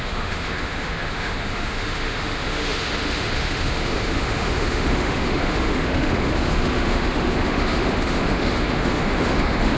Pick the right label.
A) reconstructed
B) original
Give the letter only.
A